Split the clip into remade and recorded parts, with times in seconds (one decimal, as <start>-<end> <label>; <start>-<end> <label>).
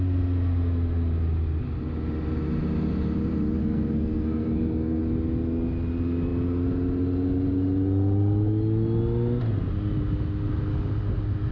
0.0-3.6 recorded; 3.6-5.0 remade; 5.0-11.5 recorded